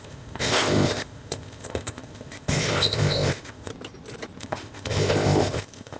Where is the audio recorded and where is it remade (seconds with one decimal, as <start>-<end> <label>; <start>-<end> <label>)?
0.0-3.7 remade; 3.7-4.4 recorded; 4.4-6.0 remade